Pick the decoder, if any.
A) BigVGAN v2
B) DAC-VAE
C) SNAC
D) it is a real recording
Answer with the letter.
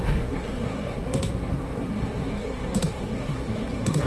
C